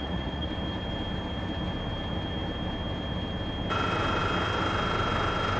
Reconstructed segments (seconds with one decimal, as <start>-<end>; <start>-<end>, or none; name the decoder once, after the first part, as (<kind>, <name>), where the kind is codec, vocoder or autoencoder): 0.0-0.5 (vocoder, Vocos)